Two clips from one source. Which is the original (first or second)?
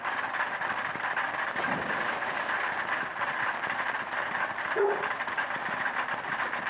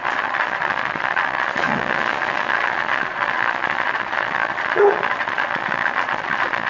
first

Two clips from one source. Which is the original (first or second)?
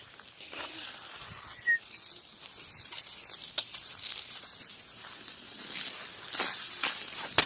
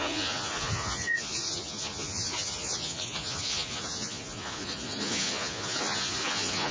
first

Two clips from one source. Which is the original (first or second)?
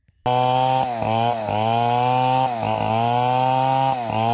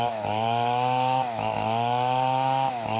first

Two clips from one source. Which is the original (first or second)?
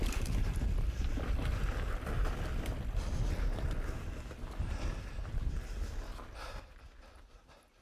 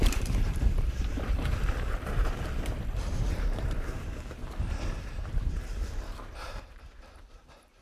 first